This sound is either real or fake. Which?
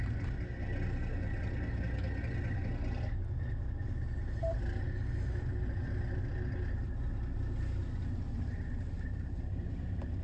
real